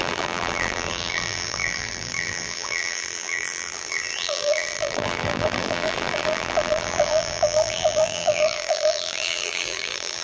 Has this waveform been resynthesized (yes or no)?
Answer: yes